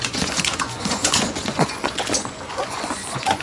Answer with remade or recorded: remade